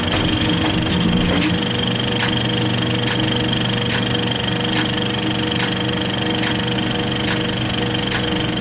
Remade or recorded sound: recorded